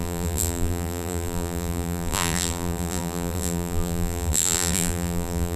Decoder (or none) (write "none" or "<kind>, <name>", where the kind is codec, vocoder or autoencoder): vocoder, BigVGAN v2